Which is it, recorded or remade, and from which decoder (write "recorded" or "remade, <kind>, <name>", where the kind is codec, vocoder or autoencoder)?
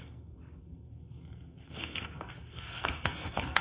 remade, codec, SNAC